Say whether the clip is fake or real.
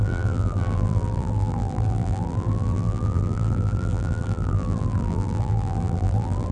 fake